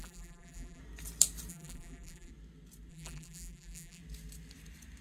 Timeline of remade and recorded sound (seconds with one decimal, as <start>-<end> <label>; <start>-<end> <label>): 0.0-0.8 remade; 0.8-1.5 recorded; 1.5-2.3 remade; 2.3-2.9 recorded; 2.9-4.0 remade; 4.0-5.0 recorded